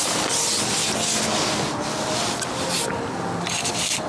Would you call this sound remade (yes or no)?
no